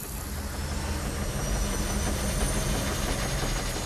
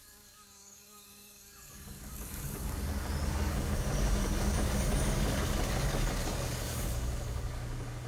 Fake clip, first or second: second